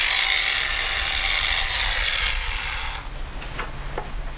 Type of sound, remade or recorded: recorded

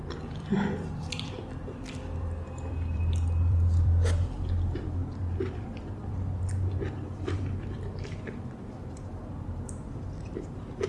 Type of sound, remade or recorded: remade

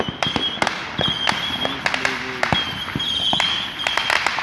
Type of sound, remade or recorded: recorded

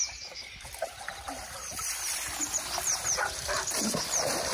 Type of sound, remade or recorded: remade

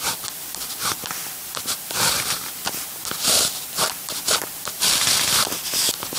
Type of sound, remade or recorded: remade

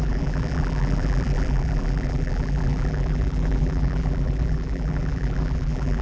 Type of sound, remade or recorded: remade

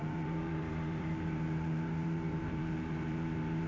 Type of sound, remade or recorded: remade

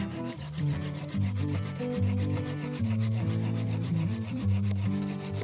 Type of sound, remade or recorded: remade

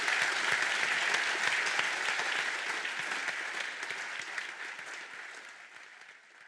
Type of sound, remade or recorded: recorded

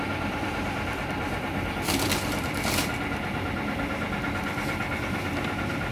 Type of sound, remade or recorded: remade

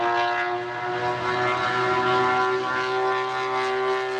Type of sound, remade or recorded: recorded